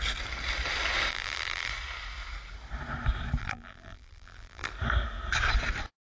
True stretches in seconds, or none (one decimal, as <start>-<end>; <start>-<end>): 0.0-1.1; 1.7-3.4; 4.7-6.1